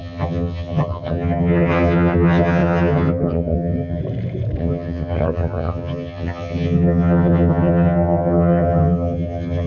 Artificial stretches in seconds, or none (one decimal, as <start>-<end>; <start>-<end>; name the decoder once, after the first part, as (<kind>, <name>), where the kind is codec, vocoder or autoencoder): 0.0-4.0 (vocoder, HiFi-GAN); 4.6-9.7